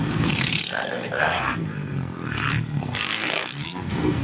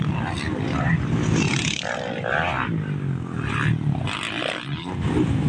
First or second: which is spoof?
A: first